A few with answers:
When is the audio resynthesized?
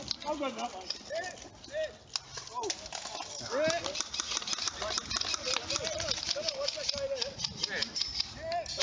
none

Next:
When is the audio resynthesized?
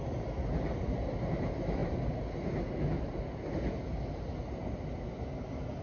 none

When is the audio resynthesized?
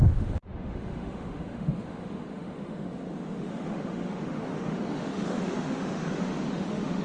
0.0-7.0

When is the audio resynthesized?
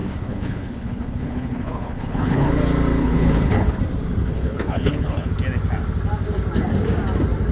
0.0-2.5; 3.0-3.8; 4.2-5.3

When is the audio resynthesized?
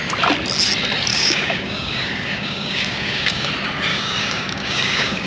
1.1-3.5; 3.9-5.3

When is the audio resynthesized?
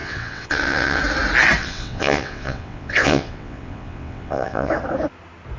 0.0-1.0; 1.6-4.7